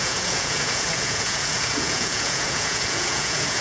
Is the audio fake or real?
fake